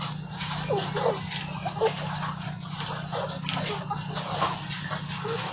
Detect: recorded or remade recorded